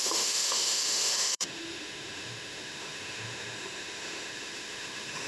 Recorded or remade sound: remade